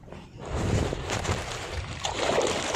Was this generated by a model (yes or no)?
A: yes